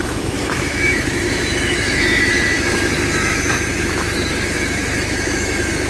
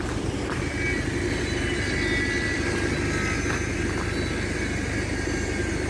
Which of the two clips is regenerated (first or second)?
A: first